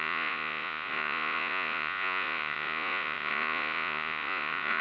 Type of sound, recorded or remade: remade